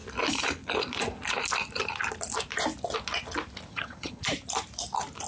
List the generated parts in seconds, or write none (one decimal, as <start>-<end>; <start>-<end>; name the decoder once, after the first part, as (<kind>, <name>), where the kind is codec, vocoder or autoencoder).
3.7-4.2 (vocoder, HiFi-GAN)